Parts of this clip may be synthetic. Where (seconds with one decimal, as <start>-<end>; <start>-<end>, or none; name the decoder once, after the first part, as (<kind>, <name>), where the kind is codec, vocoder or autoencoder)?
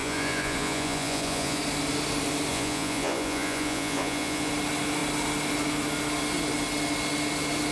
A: 0.0-1.6 (vocoder, Vocos); 2.5-4.5